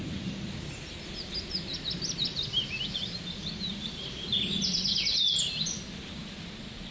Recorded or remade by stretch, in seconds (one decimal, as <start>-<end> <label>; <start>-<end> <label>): 0.0-6.9 recorded